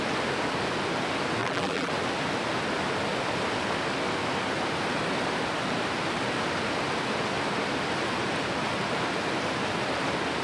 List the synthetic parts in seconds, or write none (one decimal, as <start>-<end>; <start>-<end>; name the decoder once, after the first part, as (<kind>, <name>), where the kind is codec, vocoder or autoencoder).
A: 1.4-1.9 (vocoder, BigVGAN v2)